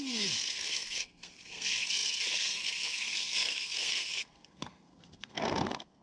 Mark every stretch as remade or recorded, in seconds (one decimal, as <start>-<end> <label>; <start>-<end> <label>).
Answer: 0.0-6.0 remade